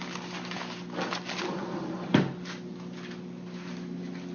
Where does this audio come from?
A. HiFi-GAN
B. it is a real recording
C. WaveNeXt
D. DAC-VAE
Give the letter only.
B